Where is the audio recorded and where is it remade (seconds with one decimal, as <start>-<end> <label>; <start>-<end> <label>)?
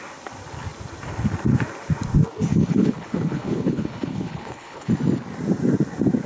0.0-2.5 recorded; 2.5-4.9 remade; 4.9-6.3 recorded